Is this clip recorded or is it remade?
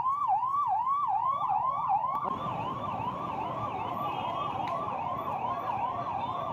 remade